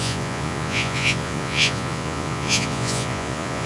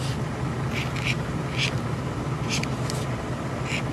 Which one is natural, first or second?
second